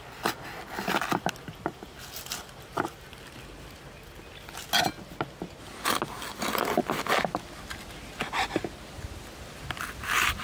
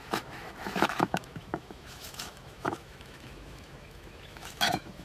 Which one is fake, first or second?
second